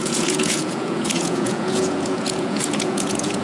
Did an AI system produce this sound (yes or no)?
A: yes